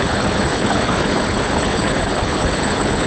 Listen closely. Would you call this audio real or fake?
fake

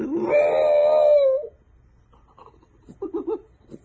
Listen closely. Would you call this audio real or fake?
real